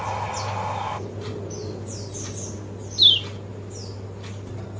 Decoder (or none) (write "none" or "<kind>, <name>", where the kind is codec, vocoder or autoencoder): none